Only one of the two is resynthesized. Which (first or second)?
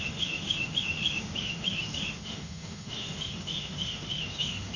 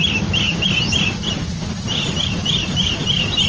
first